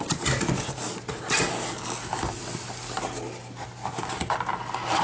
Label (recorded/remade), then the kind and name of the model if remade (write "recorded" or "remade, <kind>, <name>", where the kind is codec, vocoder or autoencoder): recorded